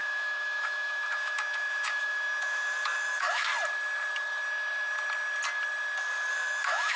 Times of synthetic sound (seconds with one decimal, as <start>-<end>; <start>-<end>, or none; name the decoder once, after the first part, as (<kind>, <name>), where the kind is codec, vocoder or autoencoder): 0.0-3.5 (autoencoder, DAC-VAE); 6.3-7.0